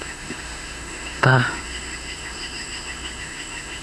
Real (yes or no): no